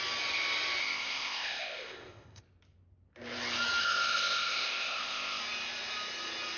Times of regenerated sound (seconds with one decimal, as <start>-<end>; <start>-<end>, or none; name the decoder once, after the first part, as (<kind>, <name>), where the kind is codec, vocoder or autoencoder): 0.8-2.4 (codec, ZipCodec); 3.8-5.4